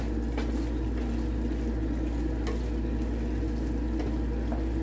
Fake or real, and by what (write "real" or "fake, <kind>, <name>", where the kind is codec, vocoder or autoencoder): real